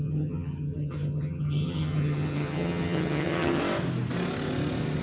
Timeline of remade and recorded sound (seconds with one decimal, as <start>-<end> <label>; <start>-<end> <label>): 0.0-3.6 remade; 3.6-5.0 recorded

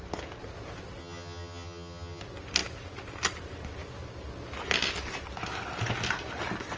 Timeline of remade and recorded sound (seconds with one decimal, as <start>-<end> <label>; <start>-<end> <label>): 0.0-1.0 recorded; 1.0-2.2 remade; 2.2-6.8 recorded

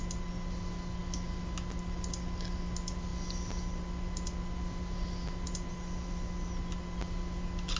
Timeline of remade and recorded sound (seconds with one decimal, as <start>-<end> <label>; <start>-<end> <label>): 0.0-7.8 recorded

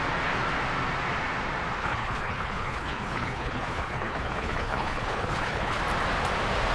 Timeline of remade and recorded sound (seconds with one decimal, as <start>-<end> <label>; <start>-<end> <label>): 0.0-1.8 recorded; 1.8-5.8 remade; 5.8-6.7 recorded

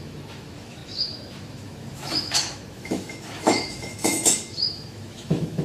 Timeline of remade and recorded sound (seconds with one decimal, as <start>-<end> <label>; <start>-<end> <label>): 0.0-5.6 remade

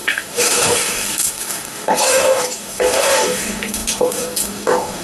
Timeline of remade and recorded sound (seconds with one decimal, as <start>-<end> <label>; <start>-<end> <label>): 0.0-5.0 remade

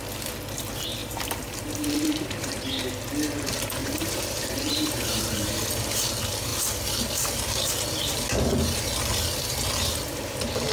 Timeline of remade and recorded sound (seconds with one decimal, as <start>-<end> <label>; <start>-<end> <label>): 0.0-1.0 recorded; 1.0-2.9 remade; 2.9-3.8 recorded; 3.8-5.5 remade; 5.5-10.7 recorded